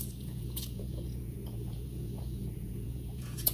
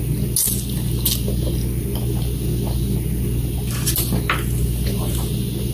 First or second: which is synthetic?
first